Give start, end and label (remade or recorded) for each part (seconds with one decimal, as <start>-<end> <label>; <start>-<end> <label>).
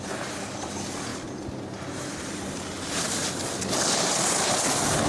0.0-5.1 recorded